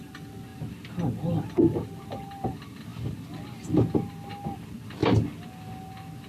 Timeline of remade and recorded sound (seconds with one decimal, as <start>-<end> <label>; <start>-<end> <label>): 0.0-6.3 recorded